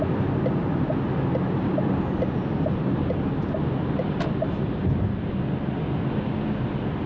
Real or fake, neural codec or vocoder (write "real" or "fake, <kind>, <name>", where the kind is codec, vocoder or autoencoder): real